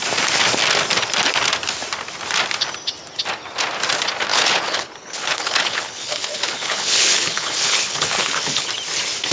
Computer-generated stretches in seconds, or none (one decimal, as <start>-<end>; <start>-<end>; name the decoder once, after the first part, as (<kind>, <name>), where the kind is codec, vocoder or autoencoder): 4.3-8.7 (codec, HILCodec)